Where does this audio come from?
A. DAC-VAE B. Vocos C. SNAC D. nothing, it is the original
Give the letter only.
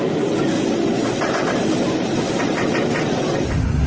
D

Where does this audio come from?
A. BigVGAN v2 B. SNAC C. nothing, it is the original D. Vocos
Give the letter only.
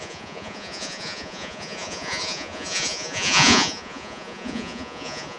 D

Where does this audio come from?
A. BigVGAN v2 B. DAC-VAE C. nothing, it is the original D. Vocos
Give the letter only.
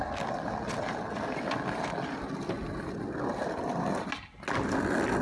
C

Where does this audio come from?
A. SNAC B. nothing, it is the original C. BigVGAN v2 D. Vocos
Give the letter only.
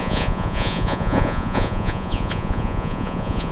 D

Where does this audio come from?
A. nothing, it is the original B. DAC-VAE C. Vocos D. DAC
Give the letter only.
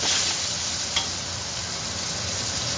A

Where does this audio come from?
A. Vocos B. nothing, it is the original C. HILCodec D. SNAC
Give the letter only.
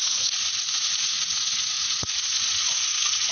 A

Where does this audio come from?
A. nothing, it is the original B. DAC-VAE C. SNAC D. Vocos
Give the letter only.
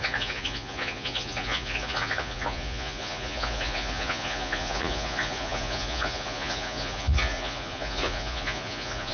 D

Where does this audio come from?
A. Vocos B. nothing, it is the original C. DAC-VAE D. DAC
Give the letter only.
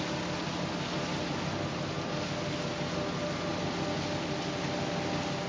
B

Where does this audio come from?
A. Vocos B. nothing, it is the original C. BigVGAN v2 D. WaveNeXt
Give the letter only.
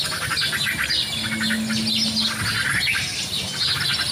B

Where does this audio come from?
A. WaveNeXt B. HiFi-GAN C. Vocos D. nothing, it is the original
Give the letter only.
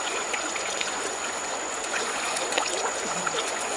C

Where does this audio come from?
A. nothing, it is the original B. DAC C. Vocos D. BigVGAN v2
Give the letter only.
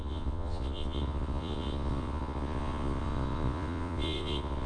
C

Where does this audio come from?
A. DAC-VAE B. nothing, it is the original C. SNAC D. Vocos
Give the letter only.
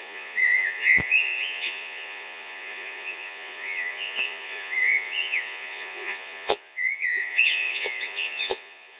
D